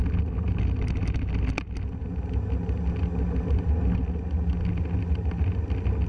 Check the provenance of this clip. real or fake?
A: real